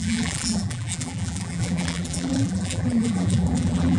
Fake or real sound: fake